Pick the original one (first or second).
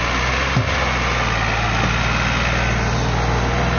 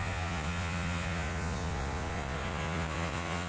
first